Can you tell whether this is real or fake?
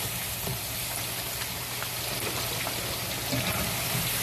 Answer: real